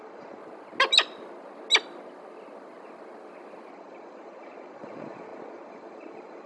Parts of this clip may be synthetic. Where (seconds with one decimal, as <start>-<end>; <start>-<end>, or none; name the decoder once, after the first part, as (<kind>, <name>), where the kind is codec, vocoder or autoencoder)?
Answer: 0.0-0.4 (vocoder, Vocos); 3.7-6.5